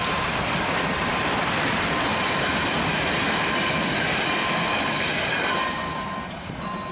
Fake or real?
real